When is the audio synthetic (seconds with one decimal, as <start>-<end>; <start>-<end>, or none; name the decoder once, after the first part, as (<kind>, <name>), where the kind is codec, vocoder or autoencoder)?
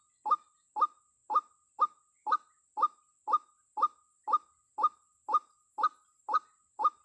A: none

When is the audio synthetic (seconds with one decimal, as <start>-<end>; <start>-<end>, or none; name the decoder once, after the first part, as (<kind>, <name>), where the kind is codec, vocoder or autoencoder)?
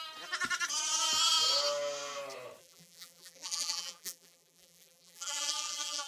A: 2.6-6.1 (vocoder, BigVGAN v2)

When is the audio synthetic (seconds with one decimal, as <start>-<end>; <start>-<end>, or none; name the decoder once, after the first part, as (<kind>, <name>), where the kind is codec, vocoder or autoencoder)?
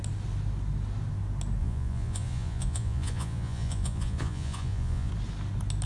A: 1.6-5.1 (vocoder, Vocos)